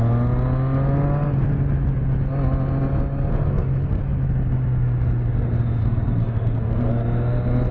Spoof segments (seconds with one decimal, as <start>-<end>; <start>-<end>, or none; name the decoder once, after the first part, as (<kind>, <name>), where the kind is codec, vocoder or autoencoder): 3.3-4.0 (codec, SNAC); 5.8-6.9